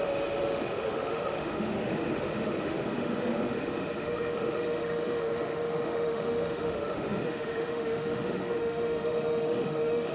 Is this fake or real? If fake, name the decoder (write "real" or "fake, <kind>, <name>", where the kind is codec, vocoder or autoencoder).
fake, autoencoder, DAC-VAE